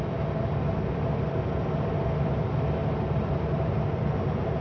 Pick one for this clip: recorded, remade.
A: recorded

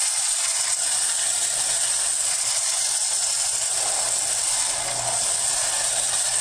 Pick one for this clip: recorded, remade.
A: recorded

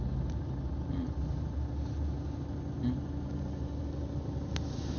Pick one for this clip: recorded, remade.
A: recorded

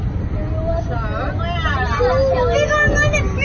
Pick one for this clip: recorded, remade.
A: recorded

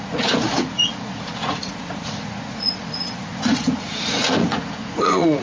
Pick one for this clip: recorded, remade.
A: remade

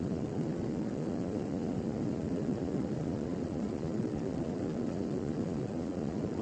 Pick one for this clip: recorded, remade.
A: remade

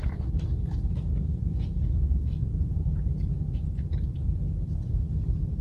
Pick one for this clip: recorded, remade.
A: recorded